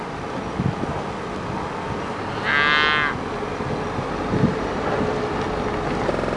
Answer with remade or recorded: recorded